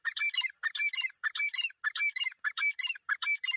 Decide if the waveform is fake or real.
fake